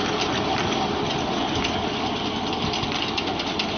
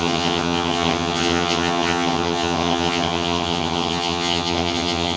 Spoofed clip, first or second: second